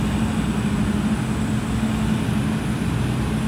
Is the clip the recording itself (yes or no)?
yes